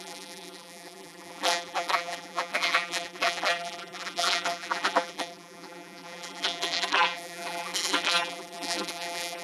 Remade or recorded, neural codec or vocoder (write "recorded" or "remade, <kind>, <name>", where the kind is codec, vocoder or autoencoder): remade, vocoder, BigVGAN v2